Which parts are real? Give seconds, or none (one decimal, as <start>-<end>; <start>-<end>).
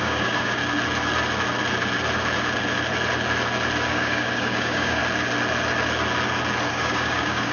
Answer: 0.6-3.9; 5.0-6.7